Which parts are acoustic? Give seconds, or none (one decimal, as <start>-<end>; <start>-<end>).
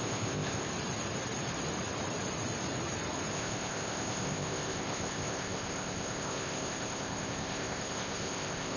0.7-3.3